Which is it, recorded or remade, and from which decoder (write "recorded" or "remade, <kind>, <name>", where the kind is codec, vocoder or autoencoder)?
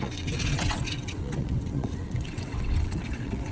remade, vocoder, WaveNeXt